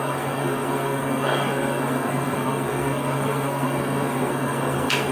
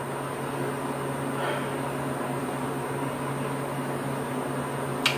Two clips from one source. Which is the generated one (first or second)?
first